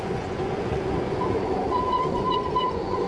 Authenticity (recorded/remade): remade